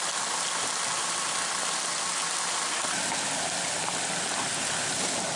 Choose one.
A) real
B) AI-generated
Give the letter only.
A